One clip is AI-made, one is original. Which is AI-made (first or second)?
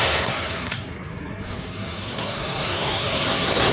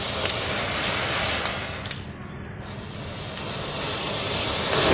first